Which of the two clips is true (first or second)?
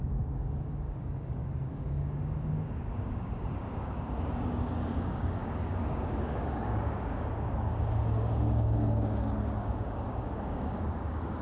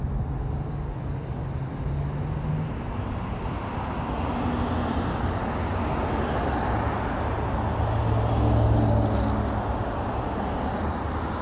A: second